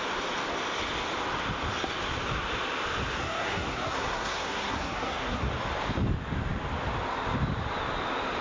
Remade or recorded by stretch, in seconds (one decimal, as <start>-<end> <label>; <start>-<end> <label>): 0.0-3.2 recorded; 3.2-5.5 remade; 5.5-8.4 recorded